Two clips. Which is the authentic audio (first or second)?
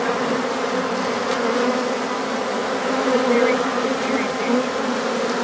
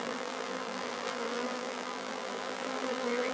first